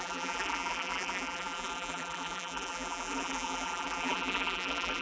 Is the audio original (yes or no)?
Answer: no